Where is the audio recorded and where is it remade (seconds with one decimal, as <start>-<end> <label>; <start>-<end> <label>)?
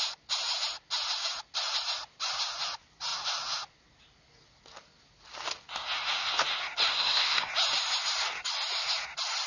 0.0-6.9 recorded; 6.9-7.5 remade; 7.5-9.5 recorded